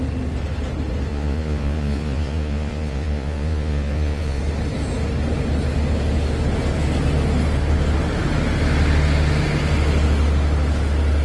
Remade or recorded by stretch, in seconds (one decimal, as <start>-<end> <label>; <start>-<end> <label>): 0.0-1.1 recorded; 1.1-4.4 remade; 4.4-11.2 recorded